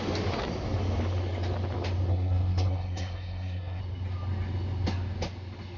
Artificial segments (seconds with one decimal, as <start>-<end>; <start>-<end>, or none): 2.1-3.8